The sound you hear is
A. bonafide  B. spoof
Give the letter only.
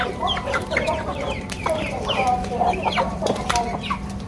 B